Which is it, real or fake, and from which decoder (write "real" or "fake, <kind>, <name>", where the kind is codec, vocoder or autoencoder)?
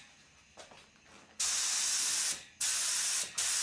real